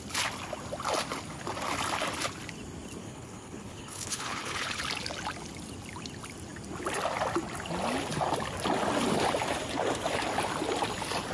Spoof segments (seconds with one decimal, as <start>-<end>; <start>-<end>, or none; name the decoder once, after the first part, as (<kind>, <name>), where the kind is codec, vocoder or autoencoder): 3.0-4.8 (codec, HILCodec)